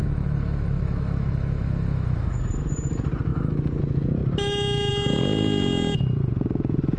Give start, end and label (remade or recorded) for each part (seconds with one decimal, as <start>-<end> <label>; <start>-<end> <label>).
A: 0.0-2.4 remade; 2.4-3.3 recorded; 3.3-3.8 remade; 3.8-7.0 recorded